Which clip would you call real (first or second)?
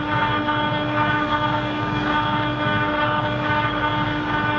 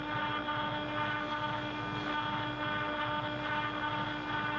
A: second